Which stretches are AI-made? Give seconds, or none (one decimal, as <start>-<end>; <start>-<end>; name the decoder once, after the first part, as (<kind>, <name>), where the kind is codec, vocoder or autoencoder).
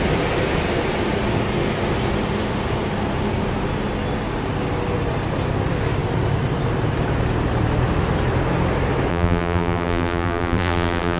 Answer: 9.1-11.2 (vocoder, BigVGAN v2)